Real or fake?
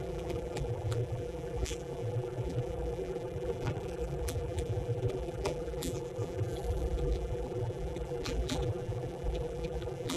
fake